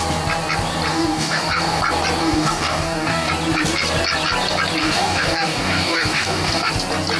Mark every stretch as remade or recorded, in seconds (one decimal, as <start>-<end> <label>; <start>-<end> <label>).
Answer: 0.0-0.9 recorded; 0.9-1.8 remade; 1.8-2.2 recorded; 2.2-3.3 remade; 3.3-4.8 recorded; 4.8-6.7 remade; 6.7-7.2 recorded